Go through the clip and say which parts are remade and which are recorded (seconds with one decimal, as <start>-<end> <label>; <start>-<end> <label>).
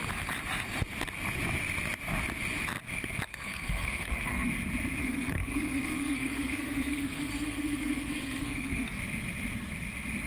0.0-3.3 recorded; 3.3-4.5 remade; 4.5-5.0 recorded; 5.0-9.0 remade; 9.0-10.3 recorded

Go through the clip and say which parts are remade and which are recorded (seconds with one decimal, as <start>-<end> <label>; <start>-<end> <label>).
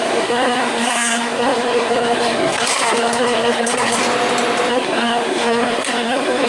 0.0-4.0 remade; 4.0-4.7 recorded; 4.7-6.5 remade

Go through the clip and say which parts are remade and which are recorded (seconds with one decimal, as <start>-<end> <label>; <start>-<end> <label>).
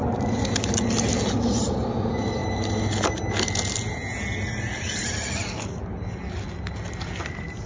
0.0-7.7 recorded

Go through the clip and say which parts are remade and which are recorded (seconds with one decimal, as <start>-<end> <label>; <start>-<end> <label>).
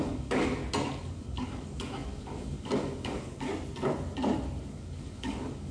0.0-0.6 remade; 0.6-1.1 recorded; 1.1-3.5 remade; 3.5-4.7 recorded; 4.7-5.7 remade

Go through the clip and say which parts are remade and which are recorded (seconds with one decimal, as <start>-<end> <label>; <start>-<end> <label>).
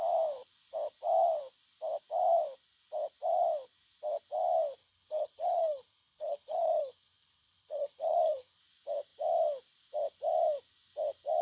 0.0-4.8 recorded; 4.8-8.6 remade; 8.6-11.4 recorded